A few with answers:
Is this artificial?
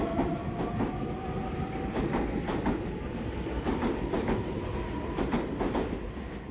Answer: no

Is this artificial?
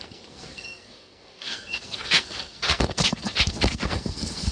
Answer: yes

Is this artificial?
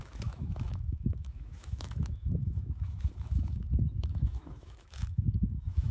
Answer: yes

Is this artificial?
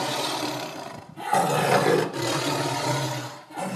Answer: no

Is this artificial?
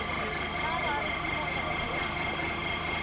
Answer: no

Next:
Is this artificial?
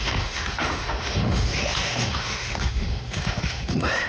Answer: yes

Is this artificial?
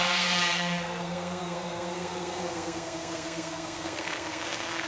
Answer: yes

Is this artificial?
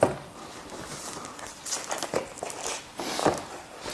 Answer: no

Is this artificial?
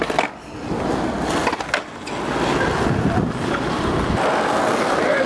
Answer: no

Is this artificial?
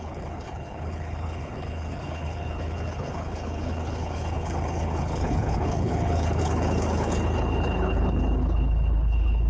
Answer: yes